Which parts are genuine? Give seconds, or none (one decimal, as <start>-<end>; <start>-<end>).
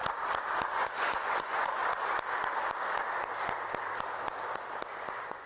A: 0.0-0.7; 1.8-5.1